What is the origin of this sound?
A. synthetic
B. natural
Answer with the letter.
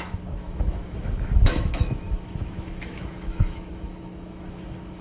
A